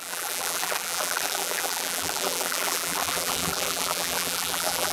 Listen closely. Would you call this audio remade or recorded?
remade